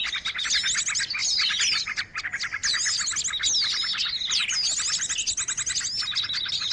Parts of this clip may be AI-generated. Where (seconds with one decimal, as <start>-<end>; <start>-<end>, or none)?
none